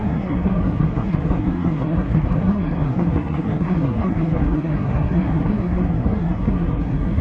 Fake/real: fake